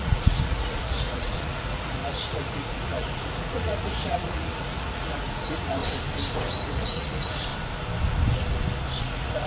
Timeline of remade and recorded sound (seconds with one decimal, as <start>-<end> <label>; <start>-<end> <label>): 0.0-5.8 remade; 5.8-6.3 recorded; 6.3-7.5 remade; 7.5-9.0 recorded; 9.0-9.5 remade

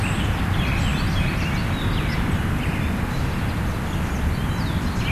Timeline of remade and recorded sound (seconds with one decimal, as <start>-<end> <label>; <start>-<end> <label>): 0.0-5.1 remade

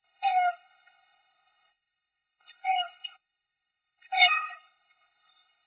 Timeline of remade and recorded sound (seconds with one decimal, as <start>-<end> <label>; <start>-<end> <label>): 0.0-5.7 remade

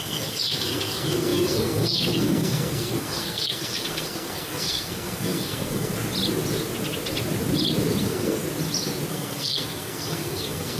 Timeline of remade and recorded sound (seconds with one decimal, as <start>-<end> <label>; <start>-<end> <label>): 0.0-5.9 remade; 5.9-8.0 recorded; 8.0-8.4 remade; 8.4-9.1 recorded; 9.1-10.8 remade

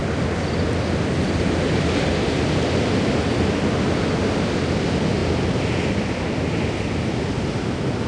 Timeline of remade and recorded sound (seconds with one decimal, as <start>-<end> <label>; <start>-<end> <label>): 0.0-8.1 recorded

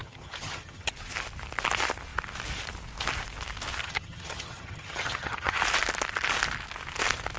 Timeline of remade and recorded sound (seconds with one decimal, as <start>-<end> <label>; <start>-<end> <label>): 0.0-0.9 remade; 0.9-3.8 recorded; 3.8-5.6 remade; 5.6-7.4 recorded

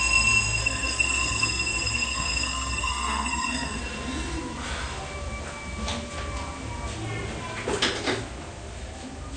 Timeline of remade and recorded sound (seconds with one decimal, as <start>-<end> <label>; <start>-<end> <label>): 0.0-0.6 recorded; 0.6-3.8 remade; 3.8-9.4 recorded